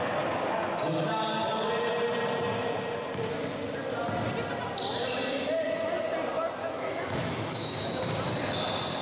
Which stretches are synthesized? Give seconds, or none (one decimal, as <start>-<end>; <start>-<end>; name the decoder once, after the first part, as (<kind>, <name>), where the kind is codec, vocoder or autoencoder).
6.6-8.0 (autoencoder, DAC-VAE)